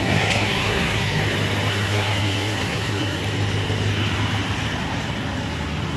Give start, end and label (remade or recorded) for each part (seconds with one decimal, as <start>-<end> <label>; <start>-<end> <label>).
0.0-1.2 remade; 1.2-1.7 recorded; 1.7-3.2 remade; 3.2-6.0 recorded